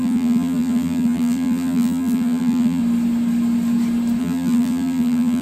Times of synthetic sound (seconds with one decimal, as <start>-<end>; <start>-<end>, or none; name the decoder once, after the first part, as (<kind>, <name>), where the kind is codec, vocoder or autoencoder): 0.0-2.8 (vocoder, BigVGAN v2); 4.2-5.4